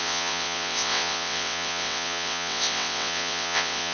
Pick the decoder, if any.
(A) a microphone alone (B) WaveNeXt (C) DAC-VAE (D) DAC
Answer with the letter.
B